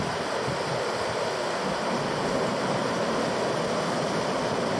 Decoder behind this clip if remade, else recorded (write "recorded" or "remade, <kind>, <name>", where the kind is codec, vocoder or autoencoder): recorded